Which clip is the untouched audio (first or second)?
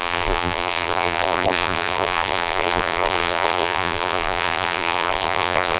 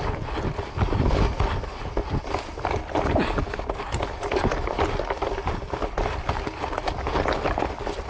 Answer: second